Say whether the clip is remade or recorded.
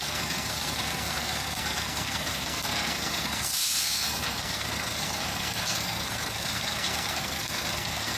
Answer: remade